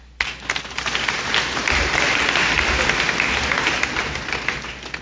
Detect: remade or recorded recorded